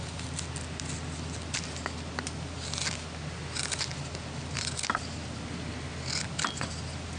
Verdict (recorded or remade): recorded